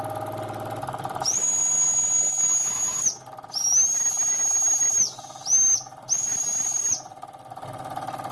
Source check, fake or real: real